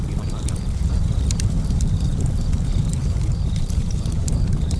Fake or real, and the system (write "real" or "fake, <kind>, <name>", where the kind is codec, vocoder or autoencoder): fake, vocoder, BigVGAN v2